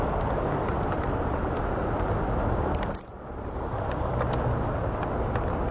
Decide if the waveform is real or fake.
real